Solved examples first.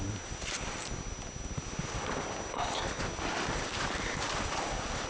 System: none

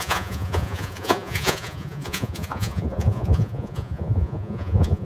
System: vocoder, Vocos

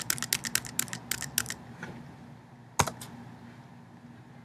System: none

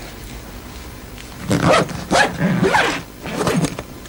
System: none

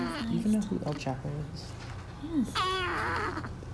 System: none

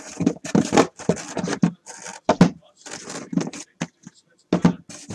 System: none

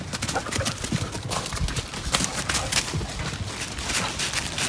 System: none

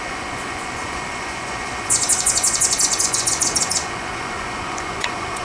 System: vocoder, Vocos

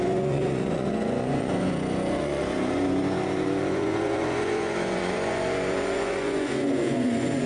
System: vocoder, Vocos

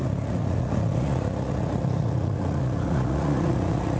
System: vocoder, Vocos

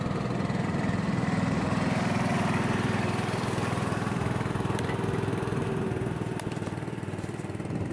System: none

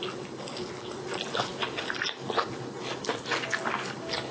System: none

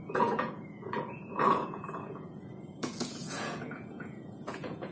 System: vocoder, Vocos